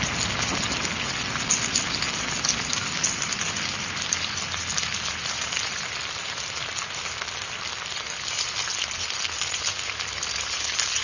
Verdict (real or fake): real